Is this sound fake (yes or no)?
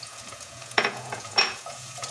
yes